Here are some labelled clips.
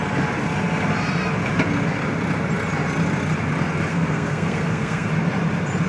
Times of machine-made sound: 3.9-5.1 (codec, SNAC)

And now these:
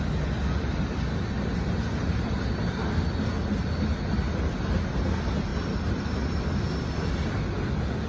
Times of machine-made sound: none

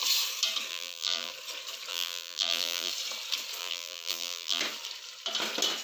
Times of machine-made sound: 0.7-1.3 (vocoder, BigVGAN v2); 1.9-2.9; 3.6-4.6